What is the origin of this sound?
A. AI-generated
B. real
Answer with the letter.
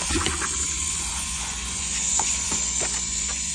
A